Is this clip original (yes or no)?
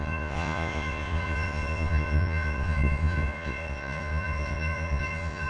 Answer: no